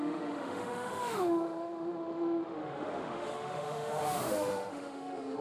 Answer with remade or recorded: remade